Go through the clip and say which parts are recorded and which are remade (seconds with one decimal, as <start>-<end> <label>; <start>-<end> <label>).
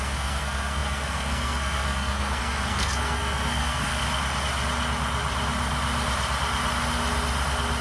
0.0-3.9 remade; 3.9-7.8 recorded